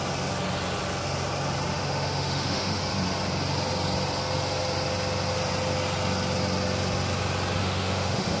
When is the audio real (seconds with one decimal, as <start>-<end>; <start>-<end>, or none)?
0.0-1.7; 2.8-7.6